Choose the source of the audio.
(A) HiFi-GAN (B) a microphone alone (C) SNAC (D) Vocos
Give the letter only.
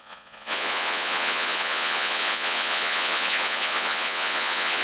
D